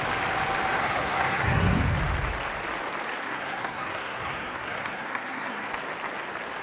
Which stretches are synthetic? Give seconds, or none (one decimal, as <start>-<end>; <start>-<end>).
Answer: 0.8-1.8; 3.2-5.7